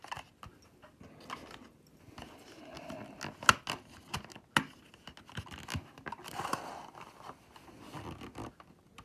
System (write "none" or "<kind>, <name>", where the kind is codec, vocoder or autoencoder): none